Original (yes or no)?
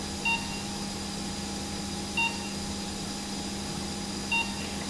yes